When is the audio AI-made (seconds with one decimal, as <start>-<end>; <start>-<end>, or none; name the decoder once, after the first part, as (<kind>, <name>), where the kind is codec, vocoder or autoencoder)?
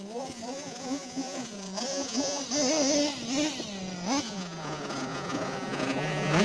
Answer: 0.0-2.4 (vocoder, Vocos); 4.2-6.4